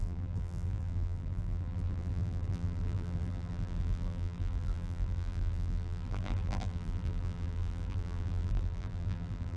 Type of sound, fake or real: fake